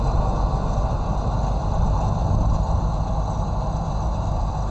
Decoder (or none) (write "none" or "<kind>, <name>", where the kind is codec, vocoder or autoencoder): none